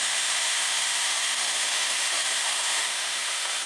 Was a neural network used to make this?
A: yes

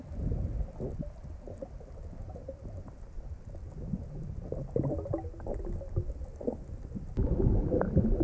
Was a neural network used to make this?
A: no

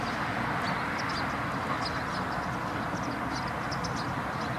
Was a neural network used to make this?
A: no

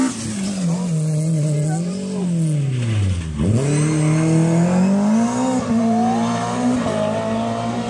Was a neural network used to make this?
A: no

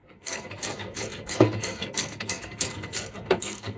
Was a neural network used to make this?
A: yes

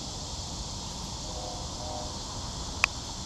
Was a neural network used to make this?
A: no